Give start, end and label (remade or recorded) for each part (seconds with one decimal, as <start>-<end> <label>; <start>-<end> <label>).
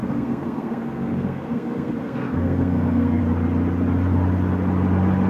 0.0-3.2 remade; 3.2-5.3 recorded